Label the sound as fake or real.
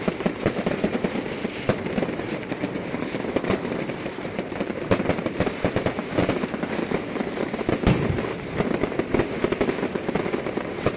fake